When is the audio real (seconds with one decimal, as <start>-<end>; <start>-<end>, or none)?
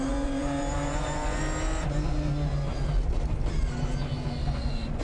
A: 1.4-4.4